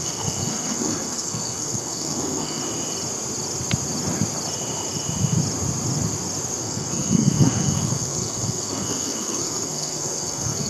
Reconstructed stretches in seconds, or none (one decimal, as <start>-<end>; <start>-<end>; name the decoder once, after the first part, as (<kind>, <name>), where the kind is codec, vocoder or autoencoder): 0.0-2.6 (codec, SNAC); 6.6-10.7